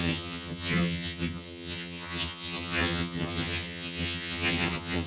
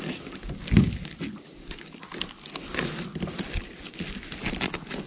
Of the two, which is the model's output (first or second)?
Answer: first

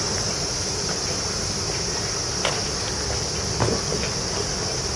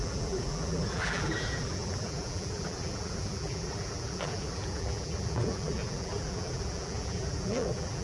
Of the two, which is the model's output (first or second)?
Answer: second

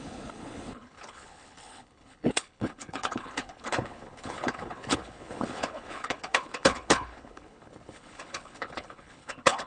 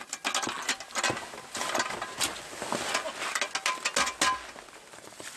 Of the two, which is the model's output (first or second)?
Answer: first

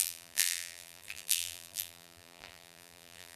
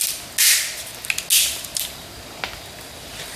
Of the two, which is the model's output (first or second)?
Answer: first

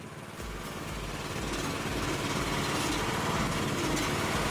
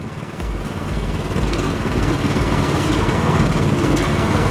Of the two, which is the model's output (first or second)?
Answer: second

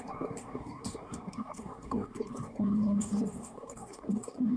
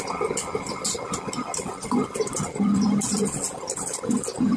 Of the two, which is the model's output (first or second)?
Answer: first